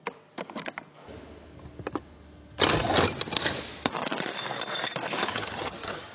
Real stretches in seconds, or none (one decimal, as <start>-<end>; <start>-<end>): 0.0-5.3